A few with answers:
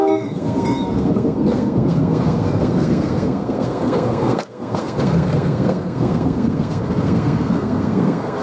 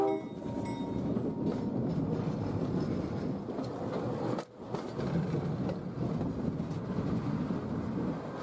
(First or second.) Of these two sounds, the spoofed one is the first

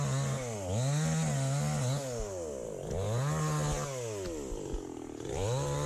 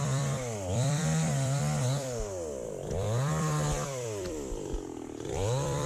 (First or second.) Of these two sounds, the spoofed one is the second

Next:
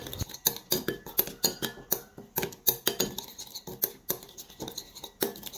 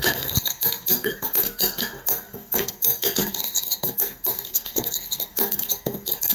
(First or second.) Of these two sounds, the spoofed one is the second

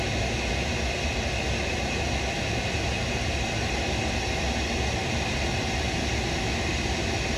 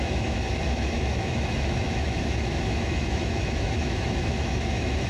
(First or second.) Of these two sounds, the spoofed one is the second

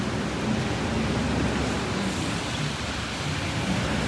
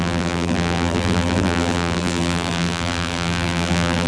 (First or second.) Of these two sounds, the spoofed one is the second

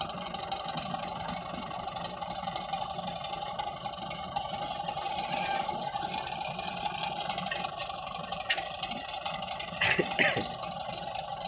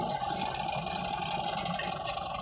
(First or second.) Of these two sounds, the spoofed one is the first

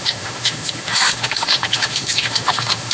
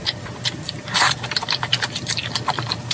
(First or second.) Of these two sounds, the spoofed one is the first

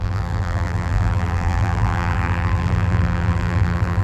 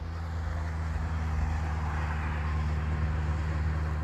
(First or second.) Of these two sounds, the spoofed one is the first